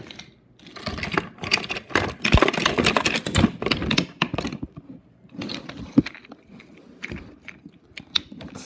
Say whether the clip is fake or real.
real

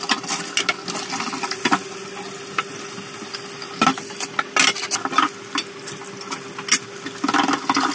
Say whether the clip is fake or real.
real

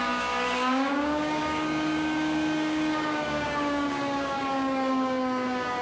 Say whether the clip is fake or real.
fake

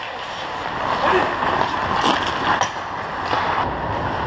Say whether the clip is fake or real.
real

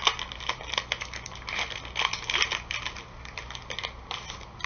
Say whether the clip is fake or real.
real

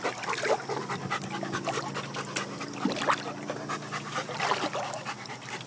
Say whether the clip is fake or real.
real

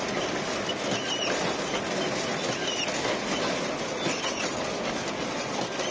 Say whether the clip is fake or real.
real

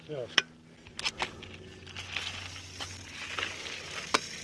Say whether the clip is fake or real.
real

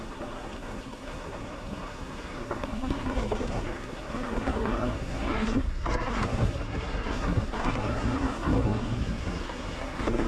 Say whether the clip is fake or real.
fake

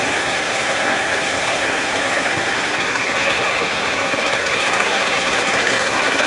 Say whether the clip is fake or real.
fake